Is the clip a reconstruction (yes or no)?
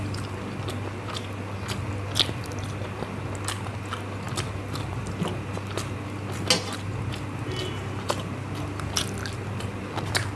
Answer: no